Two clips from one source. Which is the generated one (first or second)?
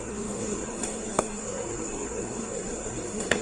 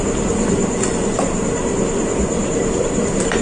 first